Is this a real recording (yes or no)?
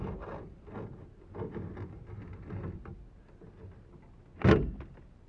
yes